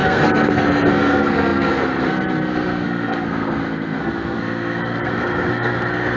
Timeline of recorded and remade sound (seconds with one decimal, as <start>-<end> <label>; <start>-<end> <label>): 0.0-6.2 remade